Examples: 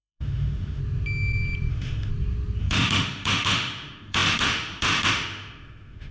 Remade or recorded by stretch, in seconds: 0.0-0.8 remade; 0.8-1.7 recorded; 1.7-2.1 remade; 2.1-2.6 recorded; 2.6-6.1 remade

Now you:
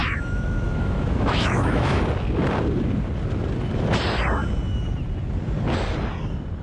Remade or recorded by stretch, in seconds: 0.0-2.0 remade; 2.0-6.6 recorded

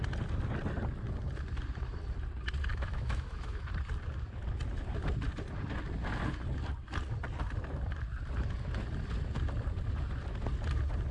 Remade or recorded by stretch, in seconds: 0.0-2.7 recorded; 2.7-3.6 remade; 3.6-11.1 recorded

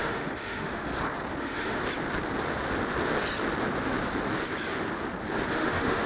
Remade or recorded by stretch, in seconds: 0.0-0.9 remade; 0.9-1.4 recorded; 1.4-1.8 remade; 1.8-5.5 recorded; 5.5-6.1 remade